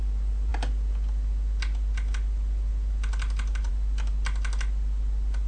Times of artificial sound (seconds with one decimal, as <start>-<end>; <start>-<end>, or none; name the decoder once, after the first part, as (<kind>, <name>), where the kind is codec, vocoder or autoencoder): none

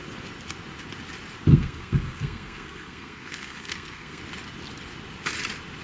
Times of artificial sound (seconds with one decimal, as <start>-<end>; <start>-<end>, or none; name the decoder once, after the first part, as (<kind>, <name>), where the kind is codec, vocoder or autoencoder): 1.5-4.2 (codec, SNAC)

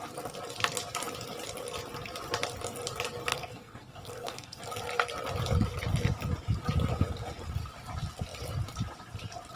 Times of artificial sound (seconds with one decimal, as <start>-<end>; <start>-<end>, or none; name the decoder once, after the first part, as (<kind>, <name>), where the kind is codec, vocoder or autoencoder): 3.3-4.6 (codec, SNAC)

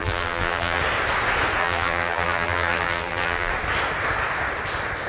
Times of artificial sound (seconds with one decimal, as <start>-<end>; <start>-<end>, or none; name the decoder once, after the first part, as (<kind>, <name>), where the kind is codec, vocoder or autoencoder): 0.0-0.8 (vocoder, BigVGAN v2); 1.6-3.5